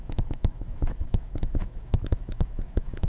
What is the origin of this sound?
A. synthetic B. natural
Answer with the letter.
A